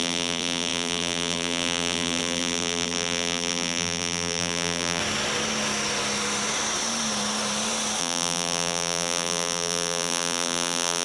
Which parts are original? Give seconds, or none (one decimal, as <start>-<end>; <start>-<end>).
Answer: 5.0-8.0